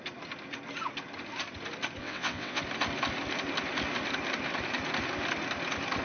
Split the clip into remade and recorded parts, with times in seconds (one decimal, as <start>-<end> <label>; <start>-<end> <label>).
0.0-2.0 recorded; 2.0-2.6 remade; 2.6-6.0 recorded